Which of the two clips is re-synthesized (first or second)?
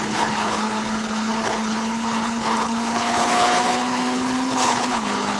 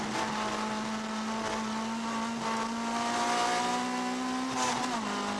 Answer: first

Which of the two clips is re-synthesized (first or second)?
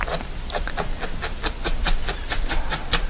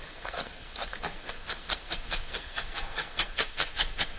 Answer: second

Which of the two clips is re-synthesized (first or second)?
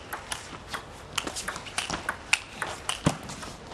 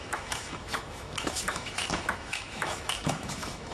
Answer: second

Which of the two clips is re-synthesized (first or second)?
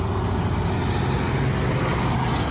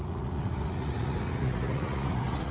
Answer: second